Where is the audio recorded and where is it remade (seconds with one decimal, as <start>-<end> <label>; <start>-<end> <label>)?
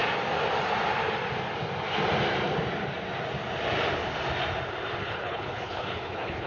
0.0-5.0 recorded; 5.0-6.5 remade